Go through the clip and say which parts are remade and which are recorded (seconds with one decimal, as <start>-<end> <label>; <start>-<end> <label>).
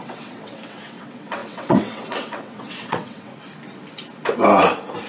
0.0-3.3 remade; 3.3-5.1 recorded